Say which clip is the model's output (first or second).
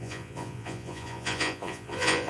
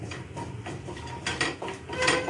first